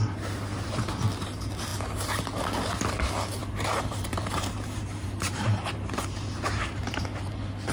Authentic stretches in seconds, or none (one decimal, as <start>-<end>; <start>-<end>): 0.0-3.4; 7.0-7.7